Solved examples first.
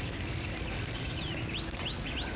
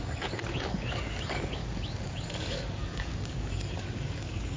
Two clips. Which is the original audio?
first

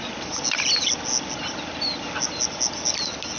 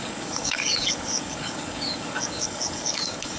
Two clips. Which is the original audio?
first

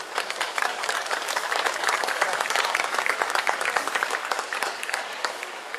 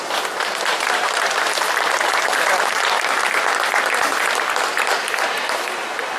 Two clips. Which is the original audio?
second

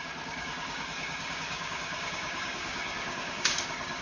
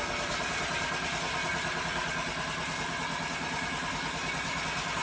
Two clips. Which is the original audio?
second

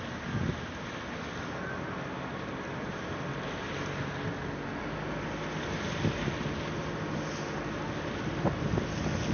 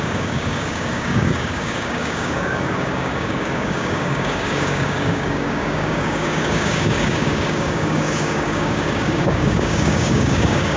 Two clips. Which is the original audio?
first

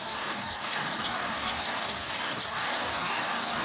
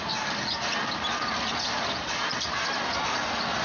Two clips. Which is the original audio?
second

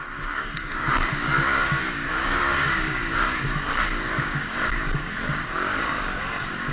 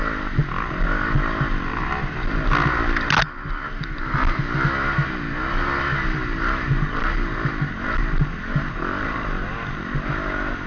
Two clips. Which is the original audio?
second